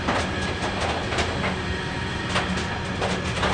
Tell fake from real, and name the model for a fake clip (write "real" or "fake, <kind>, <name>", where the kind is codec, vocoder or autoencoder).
real